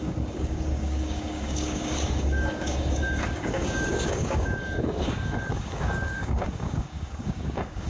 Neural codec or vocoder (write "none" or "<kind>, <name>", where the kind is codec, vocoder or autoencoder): codec, DAC